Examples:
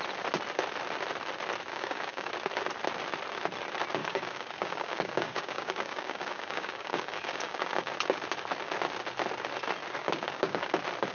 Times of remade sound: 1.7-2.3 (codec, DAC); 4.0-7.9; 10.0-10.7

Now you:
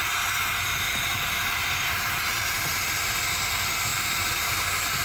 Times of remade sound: 1.1-2.7 (vocoder, BigVGAN v2); 3.9-5.0

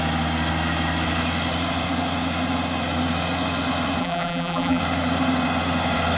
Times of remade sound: 4.0-4.8 (vocoder, BigVGAN v2)

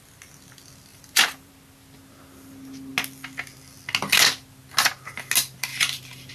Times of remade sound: 0.9-1.5 (vocoder, BigVGAN v2); 5.7-6.3

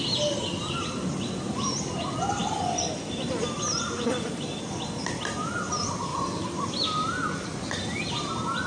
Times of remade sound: 2.4-3.3 (vocoder, BigVGAN v2); 6.1-7.8

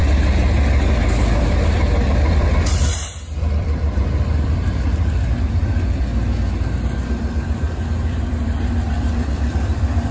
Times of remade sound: 0.0-6.1 (vocoder, BigVGAN v2); 6.8-10.1

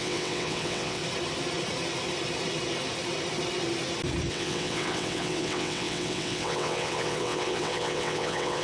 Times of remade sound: 0.0-1.0 (vocoder, WaveNeXt); 4.3-8.6

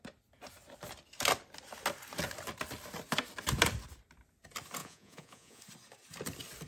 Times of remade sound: 4.8-5.6 (vocoder, Vocos)